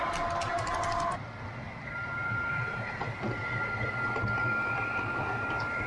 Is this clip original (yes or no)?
yes